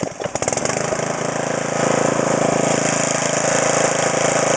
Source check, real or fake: real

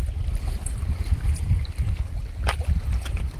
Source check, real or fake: real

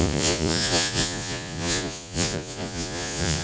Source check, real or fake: fake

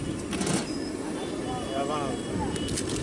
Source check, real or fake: real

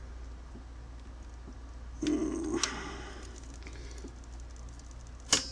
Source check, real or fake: real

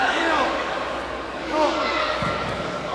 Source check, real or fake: fake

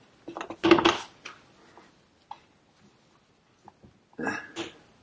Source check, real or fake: real